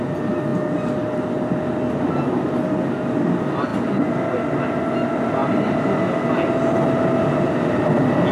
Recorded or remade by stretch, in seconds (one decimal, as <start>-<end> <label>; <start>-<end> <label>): 0.0-8.3 recorded